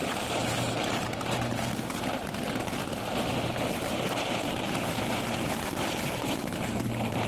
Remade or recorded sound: remade